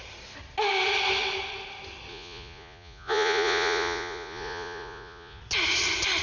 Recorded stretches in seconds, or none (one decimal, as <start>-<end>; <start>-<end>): 0.0-2.1; 5.4-6.2